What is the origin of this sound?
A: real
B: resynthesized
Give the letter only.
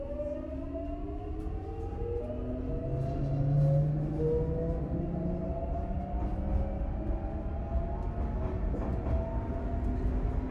A